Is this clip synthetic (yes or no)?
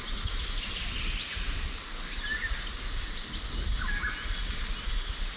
no